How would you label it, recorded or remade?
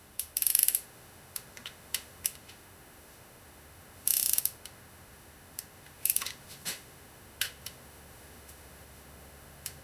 remade